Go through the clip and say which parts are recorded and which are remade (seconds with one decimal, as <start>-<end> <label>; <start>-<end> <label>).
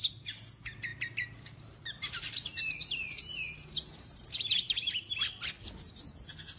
0.0-0.9 recorded; 0.9-4.9 remade; 4.9-6.6 recorded